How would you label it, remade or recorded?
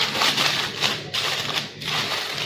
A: recorded